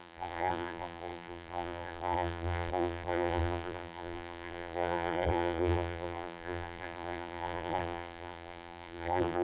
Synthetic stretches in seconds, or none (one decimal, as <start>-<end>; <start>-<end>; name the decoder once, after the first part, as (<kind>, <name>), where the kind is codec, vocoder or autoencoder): 0.0-9.4 (vocoder, BigVGAN v2)